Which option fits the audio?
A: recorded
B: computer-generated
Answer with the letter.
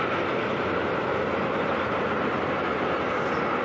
A